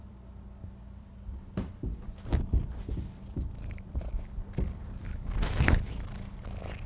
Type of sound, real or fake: fake